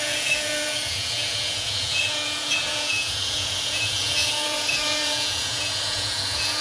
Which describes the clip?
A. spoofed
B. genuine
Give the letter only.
A